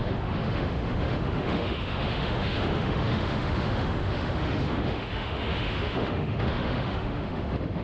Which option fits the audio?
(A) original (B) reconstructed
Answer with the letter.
B